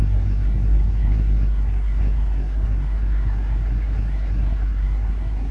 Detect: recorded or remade remade